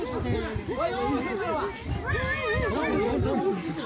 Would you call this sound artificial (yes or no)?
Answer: no